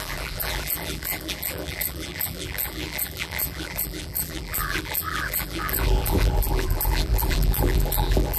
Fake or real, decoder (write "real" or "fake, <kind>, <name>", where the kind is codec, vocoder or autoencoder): fake, vocoder, BigVGAN v2